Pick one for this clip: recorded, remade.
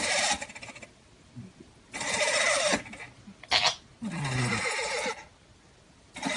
recorded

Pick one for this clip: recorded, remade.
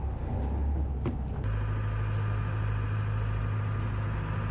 recorded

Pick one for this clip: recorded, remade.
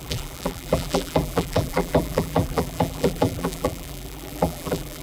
remade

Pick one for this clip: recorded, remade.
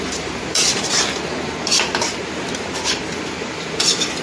remade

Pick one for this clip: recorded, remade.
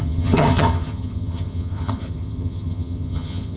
remade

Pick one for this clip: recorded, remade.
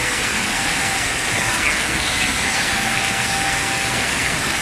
remade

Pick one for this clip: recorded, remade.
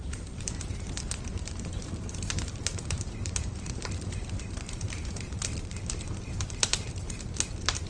remade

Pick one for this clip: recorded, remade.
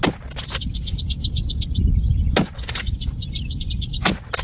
recorded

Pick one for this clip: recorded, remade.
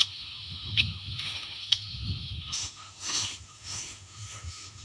remade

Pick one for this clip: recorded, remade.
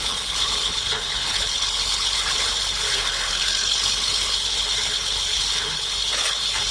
remade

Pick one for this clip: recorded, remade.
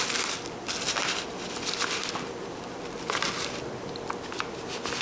remade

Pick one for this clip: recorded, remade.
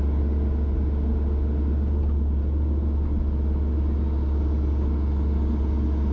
recorded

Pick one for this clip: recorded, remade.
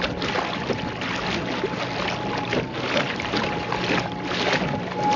recorded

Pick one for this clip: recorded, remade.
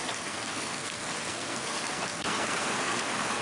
remade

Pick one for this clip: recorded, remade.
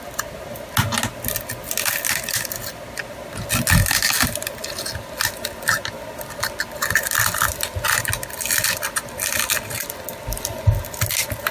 recorded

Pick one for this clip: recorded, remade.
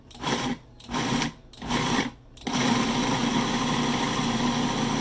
recorded